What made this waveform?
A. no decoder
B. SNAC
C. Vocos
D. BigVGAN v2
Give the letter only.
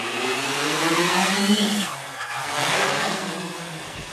B